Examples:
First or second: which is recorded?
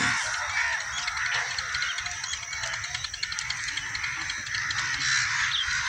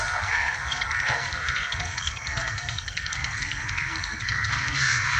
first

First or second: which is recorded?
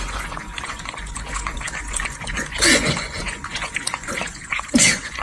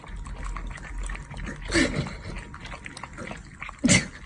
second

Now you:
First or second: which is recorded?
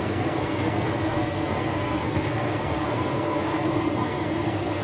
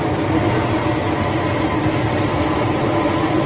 second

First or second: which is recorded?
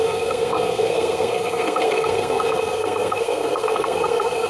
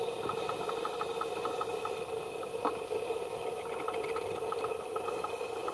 second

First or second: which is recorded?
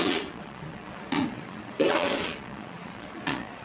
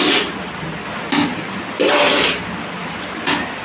second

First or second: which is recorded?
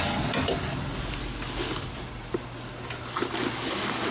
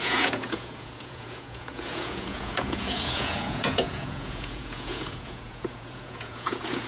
first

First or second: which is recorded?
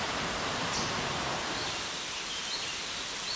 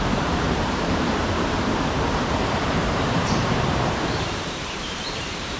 first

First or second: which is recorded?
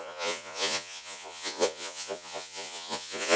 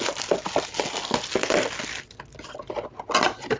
second